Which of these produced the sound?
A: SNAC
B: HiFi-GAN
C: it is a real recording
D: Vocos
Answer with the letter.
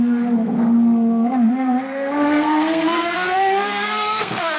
A